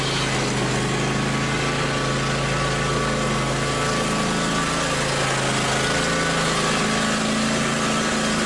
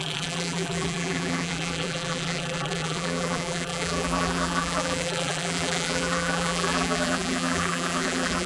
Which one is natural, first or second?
first